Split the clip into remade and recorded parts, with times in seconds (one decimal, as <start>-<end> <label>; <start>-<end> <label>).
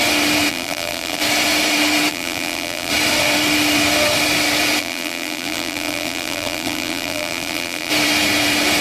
0.0-0.5 recorded; 0.5-1.2 remade; 1.2-2.1 recorded; 2.1-2.9 remade; 2.9-4.8 recorded; 4.8-7.9 remade; 7.9-8.8 recorded